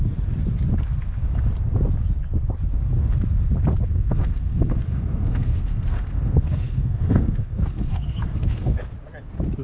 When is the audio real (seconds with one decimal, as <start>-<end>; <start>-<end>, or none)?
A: 0.0-3.9; 8.8-9.6